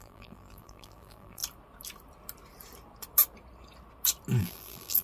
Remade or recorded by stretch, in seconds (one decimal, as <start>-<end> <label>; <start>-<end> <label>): 0.0-1.4 remade; 1.4-4.4 recorded; 4.4-5.0 remade